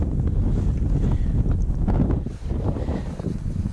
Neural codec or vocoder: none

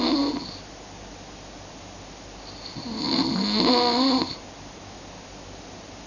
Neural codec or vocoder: none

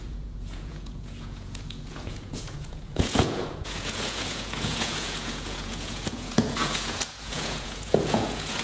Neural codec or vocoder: vocoder, Vocos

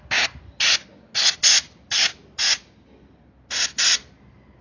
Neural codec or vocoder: none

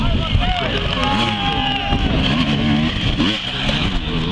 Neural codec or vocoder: none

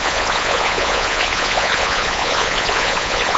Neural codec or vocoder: vocoder, Vocos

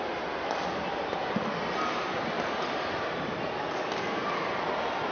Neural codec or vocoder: none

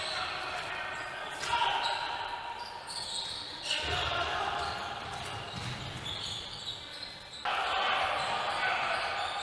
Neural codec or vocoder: none